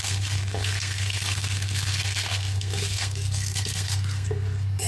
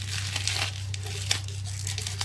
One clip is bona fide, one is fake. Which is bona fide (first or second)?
second